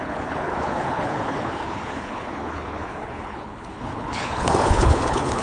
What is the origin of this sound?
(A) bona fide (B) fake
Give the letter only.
B